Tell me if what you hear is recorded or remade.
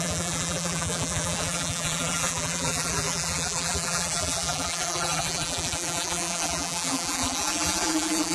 remade